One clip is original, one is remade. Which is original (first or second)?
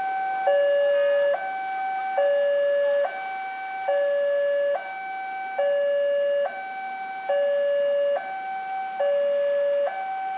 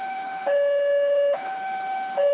first